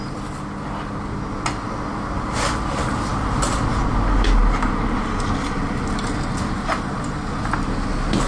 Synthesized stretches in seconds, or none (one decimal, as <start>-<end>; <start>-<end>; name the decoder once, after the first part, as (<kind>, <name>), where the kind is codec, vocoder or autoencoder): none